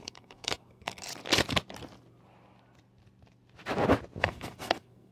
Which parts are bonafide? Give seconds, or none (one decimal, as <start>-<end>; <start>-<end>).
1.1-4.2

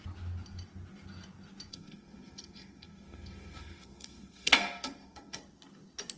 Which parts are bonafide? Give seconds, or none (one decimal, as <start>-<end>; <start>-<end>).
0.0-1.7; 5.4-6.2

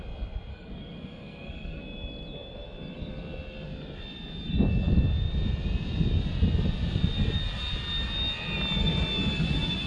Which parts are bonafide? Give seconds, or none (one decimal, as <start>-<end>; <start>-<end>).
0.0-0.5; 1.8-9.9